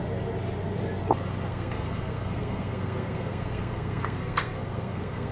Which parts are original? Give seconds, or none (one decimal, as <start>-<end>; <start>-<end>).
0.0-1.5